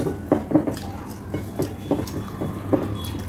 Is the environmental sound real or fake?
real